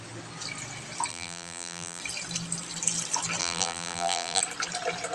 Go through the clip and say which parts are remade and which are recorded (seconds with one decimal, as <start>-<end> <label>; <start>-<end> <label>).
0.0-1.1 recorded; 1.1-2.0 remade; 2.0-3.4 recorded; 3.4-4.4 remade; 4.4-5.1 recorded